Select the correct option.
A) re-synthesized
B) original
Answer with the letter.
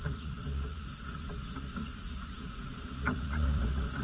A